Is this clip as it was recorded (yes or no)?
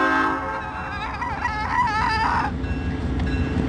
yes